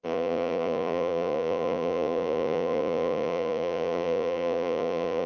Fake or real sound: fake